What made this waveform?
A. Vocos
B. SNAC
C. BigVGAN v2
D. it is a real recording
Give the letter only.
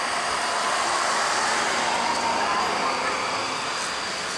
D